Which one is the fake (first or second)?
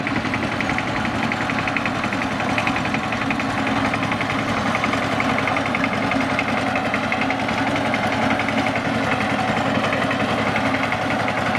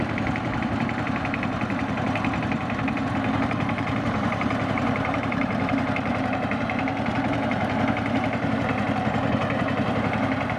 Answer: second